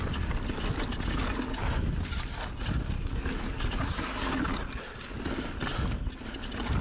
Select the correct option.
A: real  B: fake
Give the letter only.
A